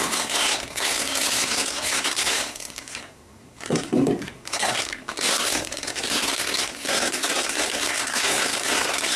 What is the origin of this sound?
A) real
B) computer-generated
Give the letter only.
B